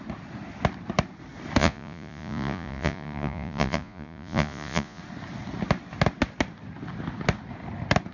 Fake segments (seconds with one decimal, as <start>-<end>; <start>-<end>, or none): 1.6-5.0